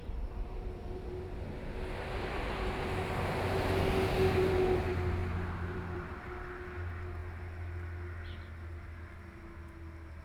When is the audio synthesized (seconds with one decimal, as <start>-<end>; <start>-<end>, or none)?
5.2-6.1